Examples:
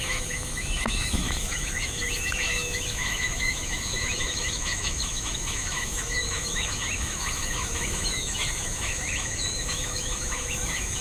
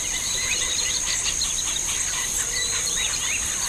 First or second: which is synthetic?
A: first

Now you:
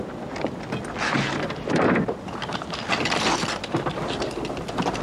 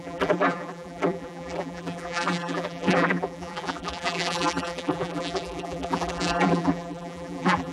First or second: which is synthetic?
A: second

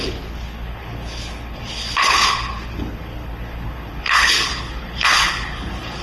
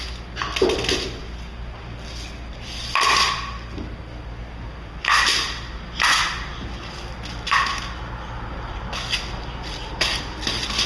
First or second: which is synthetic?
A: first